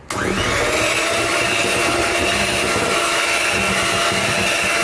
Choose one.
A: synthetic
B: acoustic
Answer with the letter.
B